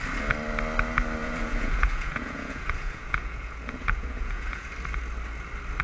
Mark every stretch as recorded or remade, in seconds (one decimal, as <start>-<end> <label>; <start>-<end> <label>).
0.0-1.2 recorded; 1.2-4.7 remade; 4.7-5.8 recorded